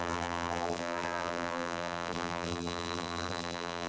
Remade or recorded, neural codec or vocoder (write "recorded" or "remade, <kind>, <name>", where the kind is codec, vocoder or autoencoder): remade, vocoder, BigVGAN v2